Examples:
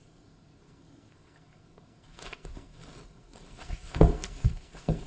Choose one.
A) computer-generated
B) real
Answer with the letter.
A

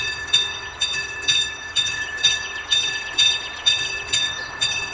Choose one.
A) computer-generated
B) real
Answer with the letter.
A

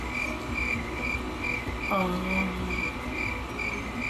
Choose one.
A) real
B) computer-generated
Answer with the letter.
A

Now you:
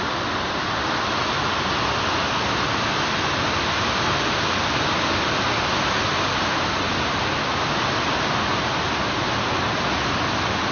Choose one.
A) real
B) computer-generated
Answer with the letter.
A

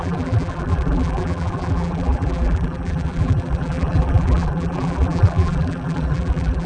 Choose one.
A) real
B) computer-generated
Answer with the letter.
B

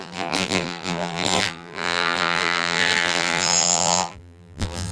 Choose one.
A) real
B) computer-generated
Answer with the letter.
B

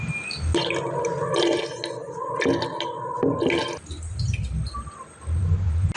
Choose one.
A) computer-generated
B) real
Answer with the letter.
B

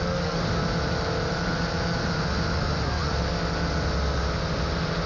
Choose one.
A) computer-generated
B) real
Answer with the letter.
B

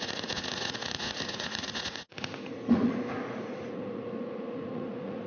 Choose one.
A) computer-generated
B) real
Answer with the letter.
A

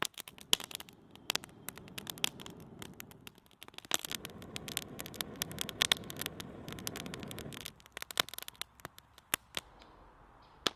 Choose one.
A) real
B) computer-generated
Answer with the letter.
A